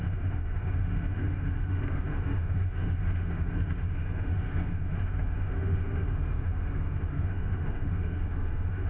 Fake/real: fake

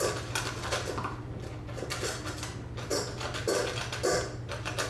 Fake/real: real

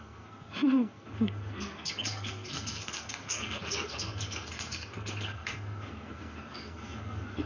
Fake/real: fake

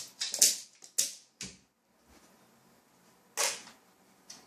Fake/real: real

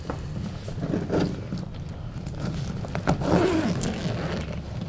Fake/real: real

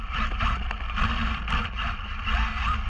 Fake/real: real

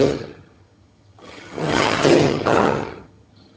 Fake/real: fake